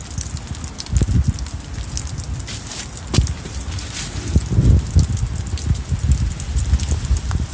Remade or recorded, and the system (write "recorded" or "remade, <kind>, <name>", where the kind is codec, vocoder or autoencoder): recorded